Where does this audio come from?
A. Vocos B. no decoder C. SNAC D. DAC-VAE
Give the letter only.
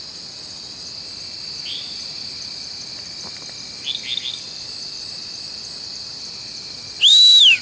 B